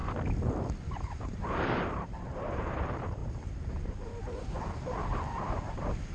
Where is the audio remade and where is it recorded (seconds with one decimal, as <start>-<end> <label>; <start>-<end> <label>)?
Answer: 0.0-0.9 recorded; 0.9-6.1 remade